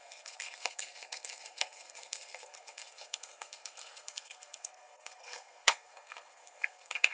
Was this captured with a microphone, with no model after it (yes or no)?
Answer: no